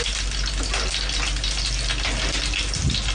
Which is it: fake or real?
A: real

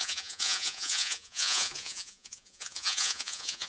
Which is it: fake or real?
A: fake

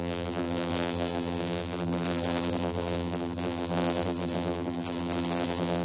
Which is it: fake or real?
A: fake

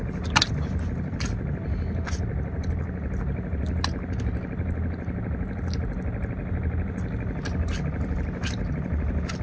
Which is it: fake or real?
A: real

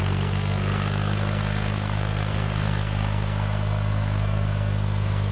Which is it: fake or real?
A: fake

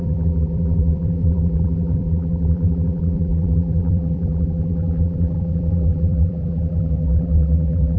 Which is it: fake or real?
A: fake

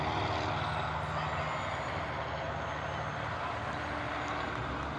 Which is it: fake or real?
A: real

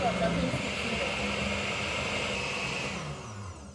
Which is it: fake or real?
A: real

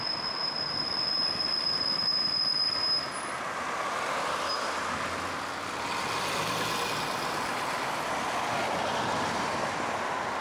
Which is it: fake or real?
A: real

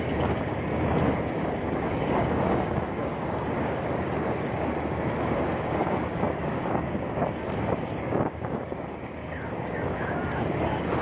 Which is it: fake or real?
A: fake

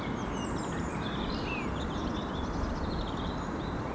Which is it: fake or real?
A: real